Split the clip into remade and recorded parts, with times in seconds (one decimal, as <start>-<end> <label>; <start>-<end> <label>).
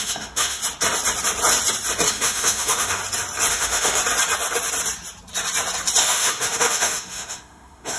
0.0-0.6 remade; 0.6-2.1 recorded; 2.1-3.0 remade; 3.0-3.5 recorded; 3.5-4.0 remade; 4.0-6.0 recorded; 6.0-8.0 remade